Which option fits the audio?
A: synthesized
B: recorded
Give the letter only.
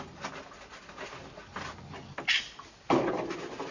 B